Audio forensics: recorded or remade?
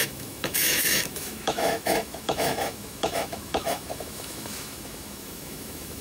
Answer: remade